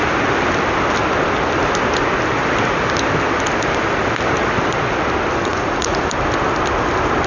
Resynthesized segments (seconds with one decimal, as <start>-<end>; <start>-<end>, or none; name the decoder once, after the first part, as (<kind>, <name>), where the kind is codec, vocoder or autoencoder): 5.5-6.0 (vocoder, Vocos)